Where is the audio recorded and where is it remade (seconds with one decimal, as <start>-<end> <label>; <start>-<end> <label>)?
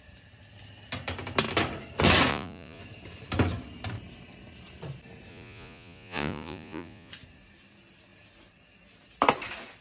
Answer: 0.0-2.3 recorded; 2.3-2.8 remade; 2.8-5.3 recorded; 5.3-7.1 remade; 7.1-9.8 recorded